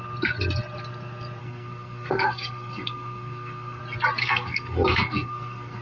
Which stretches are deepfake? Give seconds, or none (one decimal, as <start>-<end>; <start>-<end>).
1.4-3.8; 4.2-5.8